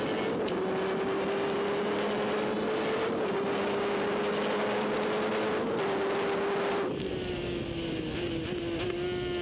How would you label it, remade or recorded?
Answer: recorded